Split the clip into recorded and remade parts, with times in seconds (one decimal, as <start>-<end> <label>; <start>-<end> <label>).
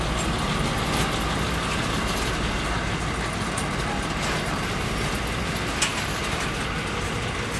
0.0-7.6 recorded